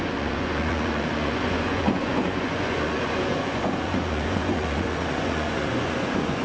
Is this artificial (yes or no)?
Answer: yes